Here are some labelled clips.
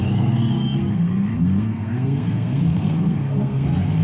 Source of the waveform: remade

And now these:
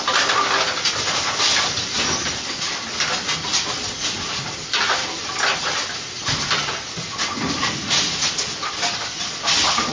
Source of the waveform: recorded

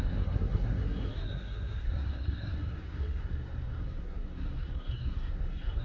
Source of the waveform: remade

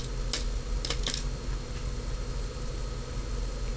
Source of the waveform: recorded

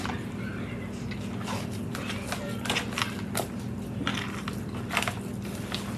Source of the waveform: recorded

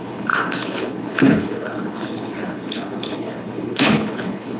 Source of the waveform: remade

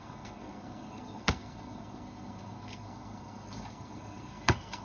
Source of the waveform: remade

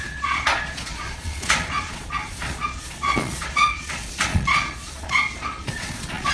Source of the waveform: remade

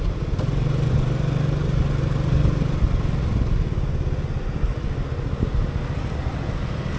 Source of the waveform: recorded